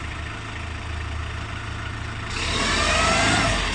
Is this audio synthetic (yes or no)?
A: no